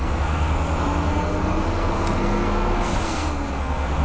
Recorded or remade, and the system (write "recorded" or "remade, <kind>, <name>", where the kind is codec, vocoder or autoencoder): remade, codec, SNAC